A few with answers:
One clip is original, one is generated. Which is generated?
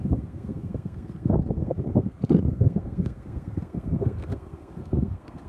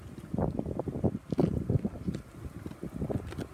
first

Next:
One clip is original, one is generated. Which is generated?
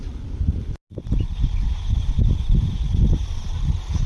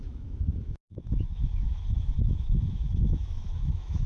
second